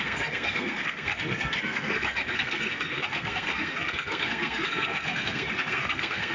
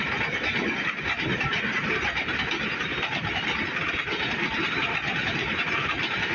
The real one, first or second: second